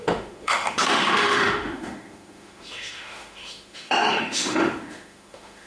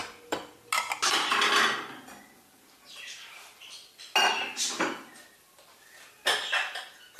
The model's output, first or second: first